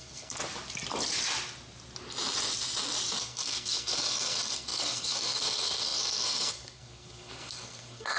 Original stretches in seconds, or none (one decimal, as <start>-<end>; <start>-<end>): 0.4-3.2